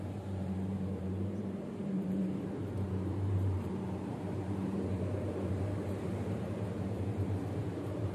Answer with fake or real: fake